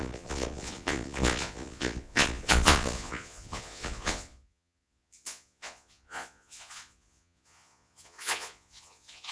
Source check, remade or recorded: remade